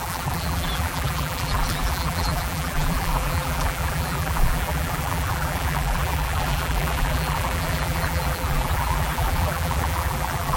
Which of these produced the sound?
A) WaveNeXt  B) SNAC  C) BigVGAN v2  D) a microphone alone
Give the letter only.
C